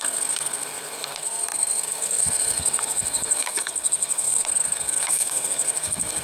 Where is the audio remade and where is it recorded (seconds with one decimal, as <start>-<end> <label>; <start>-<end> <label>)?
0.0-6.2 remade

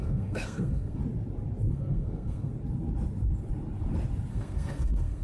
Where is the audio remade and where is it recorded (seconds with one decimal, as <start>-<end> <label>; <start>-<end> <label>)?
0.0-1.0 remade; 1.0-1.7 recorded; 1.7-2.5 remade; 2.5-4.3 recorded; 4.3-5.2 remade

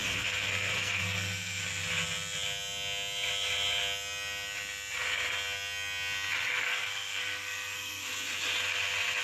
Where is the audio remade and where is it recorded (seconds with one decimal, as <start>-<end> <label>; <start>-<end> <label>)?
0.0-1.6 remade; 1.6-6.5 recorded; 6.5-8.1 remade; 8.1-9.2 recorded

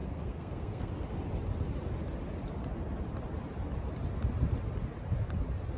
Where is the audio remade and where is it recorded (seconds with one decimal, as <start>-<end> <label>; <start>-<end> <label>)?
0.0-0.9 remade; 0.9-5.8 recorded